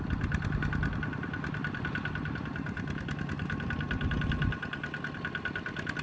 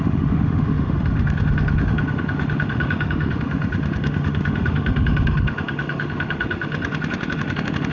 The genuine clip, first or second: first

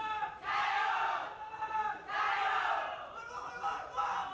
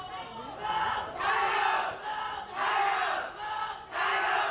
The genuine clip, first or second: second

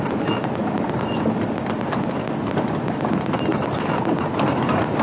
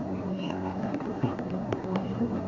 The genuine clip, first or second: first